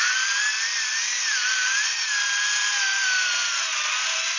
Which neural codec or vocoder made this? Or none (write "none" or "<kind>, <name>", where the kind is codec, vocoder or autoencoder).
none